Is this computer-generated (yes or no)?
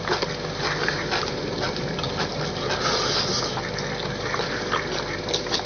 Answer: no